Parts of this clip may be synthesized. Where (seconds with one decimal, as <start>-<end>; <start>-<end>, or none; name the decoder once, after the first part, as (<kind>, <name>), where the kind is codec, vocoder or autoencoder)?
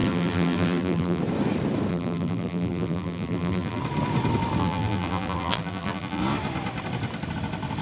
0.0-1.2 (vocoder, BigVGAN v2); 1.9-3.8; 4.6-6.2